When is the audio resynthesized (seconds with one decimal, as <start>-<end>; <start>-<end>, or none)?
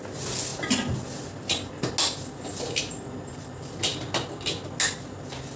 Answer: none